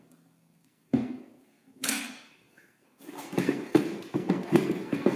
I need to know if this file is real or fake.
fake